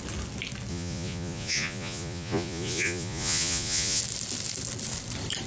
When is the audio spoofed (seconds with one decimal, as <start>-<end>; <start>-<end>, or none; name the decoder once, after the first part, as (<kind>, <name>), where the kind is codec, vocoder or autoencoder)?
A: 0.7-4.0 (vocoder, Vocos)